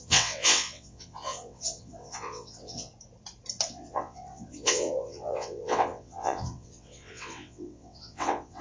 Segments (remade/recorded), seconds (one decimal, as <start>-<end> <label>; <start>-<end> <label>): 0.0-2.9 remade; 2.9-3.7 recorded; 3.7-8.6 remade